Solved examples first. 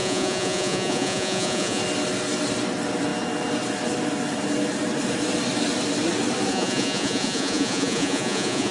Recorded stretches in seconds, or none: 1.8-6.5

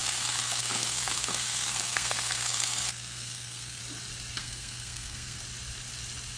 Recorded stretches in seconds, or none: 3.8-4.4; 5.4-6.4

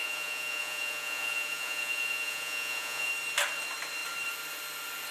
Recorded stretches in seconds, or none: 3.1-5.1

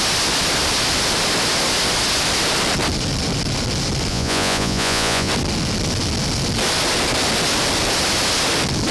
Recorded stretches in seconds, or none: 0.0-4.1; 5.3-8.9